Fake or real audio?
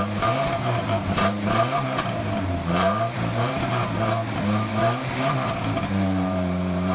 fake